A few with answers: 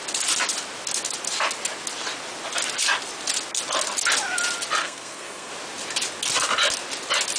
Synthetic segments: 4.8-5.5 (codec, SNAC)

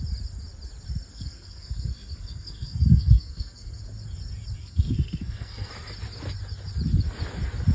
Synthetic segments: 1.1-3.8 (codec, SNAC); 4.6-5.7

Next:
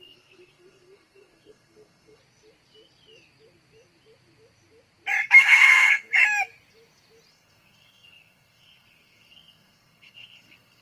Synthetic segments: 0.0-2.2 (codec, SNAC); 5.3-6.1; 7.3-10.8

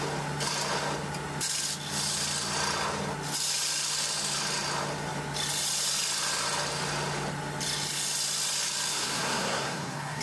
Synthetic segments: 8.9-10.2 (codec, SNAC)

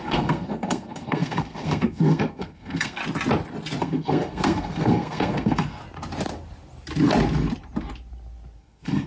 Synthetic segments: 0.0-3.0 (codec, SNAC); 3.8-5.8; 8.6-9.1

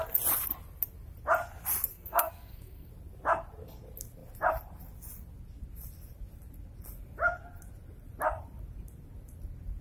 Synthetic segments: 1.9-2.9 (codec, SNAC)

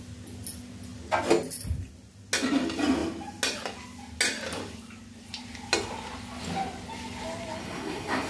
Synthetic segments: 7.6-8.3 (codec, SNAC)

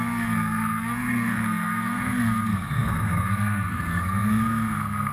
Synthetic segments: 0.0-5.1 (codec, SNAC)